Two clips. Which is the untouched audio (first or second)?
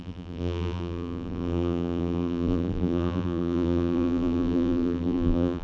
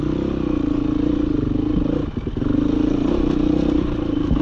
second